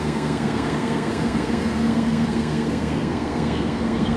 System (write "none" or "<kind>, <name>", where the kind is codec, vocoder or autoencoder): codec, SNAC